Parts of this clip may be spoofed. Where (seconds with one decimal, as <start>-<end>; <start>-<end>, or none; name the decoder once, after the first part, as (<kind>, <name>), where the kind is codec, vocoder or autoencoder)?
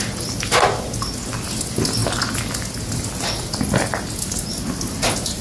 none